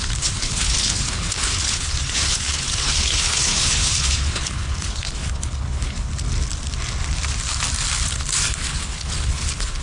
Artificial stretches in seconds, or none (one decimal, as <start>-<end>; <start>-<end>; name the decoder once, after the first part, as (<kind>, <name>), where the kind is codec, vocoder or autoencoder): 0.0-6.1 (codec, HILCodec); 8.1-9.8